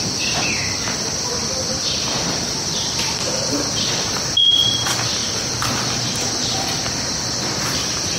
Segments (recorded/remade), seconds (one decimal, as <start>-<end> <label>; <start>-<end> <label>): 0.0-1.4 recorded; 1.4-3.7 remade; 3.7-8.2 recorded